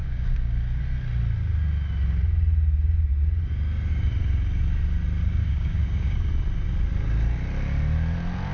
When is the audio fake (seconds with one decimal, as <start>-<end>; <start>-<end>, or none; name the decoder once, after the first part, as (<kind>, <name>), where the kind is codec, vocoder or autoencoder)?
0.0-0.8 (codec, DAC); 5.2-6.3